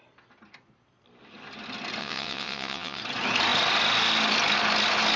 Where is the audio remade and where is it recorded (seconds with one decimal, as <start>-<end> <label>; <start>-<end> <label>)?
0.0-2.0 recorded; 2.0-3.0 remade; 3.0-5.2 recorded